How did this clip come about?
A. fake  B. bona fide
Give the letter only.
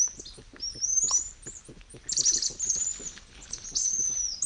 B